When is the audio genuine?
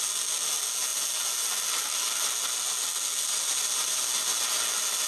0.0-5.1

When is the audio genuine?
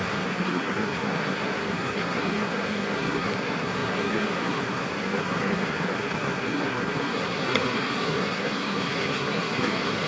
none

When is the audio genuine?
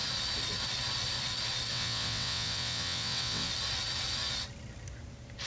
0.0-1.7; 3.5-5.5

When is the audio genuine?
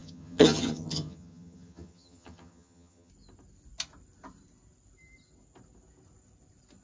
3.1-6.8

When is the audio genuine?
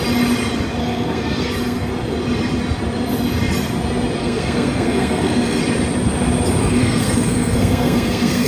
0.0-0.8; 1.9-4.2; 5.6-6.6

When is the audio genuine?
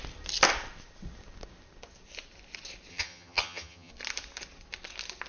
0.0-2.9; 3.9-5.3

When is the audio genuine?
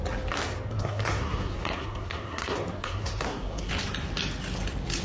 0.0-0.7; 3.7-5.0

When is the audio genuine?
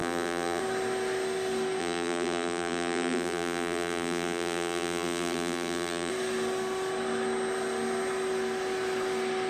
0.6-1.8; 6.1-9.5